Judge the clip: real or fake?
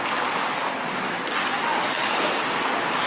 real